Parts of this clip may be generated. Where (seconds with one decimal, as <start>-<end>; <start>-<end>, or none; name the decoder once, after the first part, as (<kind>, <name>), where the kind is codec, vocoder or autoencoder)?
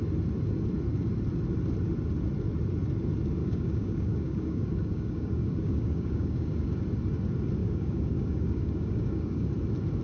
3.4-6.8 (codec, DAC); 7.6-9.5